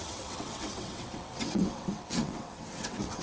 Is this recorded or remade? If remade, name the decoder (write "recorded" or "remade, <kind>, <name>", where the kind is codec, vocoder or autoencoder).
remade, vocoder, WaveNeXt